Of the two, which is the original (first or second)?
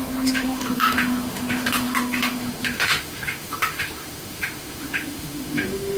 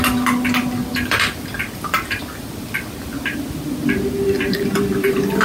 second